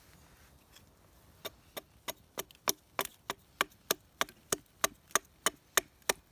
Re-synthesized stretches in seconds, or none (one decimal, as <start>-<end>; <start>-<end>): none